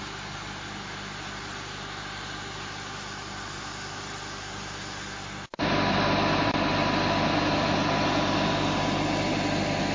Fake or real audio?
real